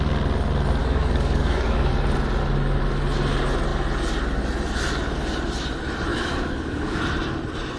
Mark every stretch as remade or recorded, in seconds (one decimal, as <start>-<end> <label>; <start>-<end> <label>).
0.0-0.8 recorded; 0.8-1.9 remade; 1.9-6.1 recorded; 6.1-7.0 remade; 7.0-7.8 recorded